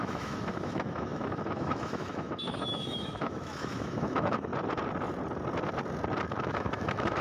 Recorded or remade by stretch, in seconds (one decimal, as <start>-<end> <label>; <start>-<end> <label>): 0.0-4.5 remade; 4.5-6.3 recorded; 6.3-7.2 remade